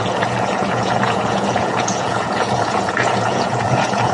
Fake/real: fake